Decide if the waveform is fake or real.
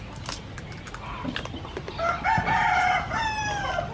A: real